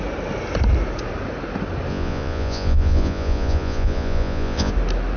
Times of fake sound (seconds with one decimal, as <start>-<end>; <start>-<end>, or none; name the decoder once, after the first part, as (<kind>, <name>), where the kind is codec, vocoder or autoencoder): 1.9-4.7 (vocoder, Vocos)